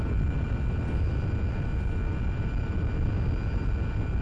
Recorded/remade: recorded